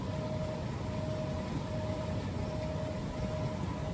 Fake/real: real